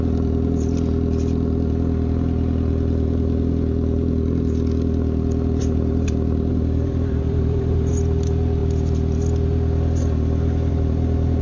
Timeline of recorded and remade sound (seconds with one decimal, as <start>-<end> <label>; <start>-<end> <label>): 0.0-5.6 recorded; 5.6-7.9 remade; 7.9-11.4 recorded